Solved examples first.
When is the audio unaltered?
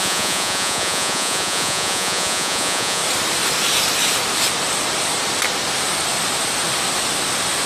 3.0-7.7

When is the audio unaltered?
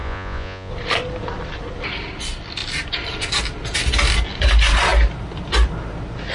0.7-6.3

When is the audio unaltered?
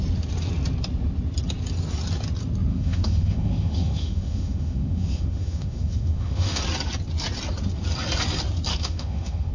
0.0-2.7; 6.6-8.7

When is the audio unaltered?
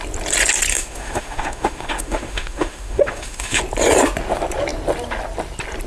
0.0-0.7; 3.6-5.9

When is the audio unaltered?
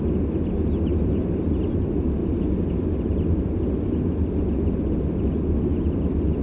0.0-6.4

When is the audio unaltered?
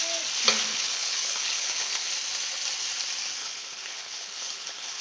0.0-0.7; 2.1-3.4